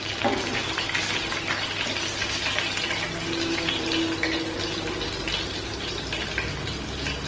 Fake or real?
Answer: real